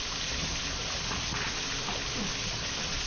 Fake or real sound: real